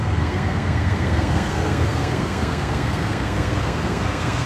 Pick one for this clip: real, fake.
fake